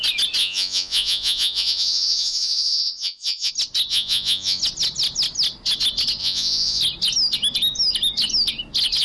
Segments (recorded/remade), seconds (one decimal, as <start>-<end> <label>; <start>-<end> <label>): 0.0-0.4 recorded; 0.4-3.5 remade; 3.5-3.9 recorded; 3.9-4.6 remade; 4.6-6.2 recorded; 6.2-6.8 remade; 6.8-9.0 recorded